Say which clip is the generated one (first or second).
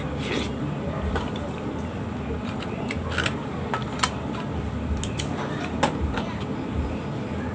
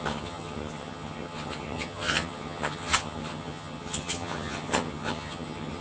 second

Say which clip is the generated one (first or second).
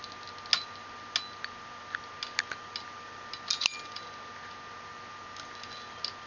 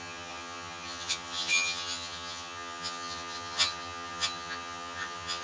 second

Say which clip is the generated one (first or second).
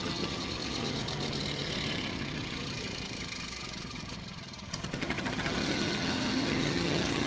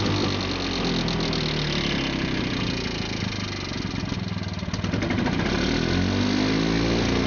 first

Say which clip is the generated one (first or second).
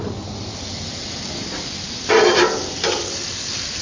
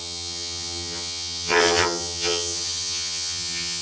second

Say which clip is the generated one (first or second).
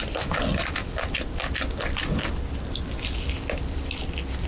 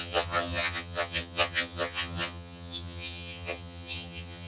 second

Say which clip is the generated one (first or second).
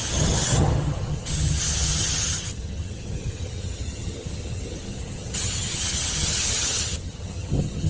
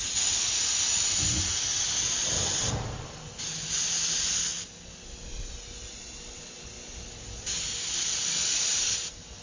first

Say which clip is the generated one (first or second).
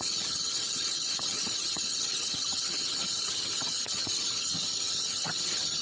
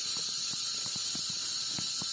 first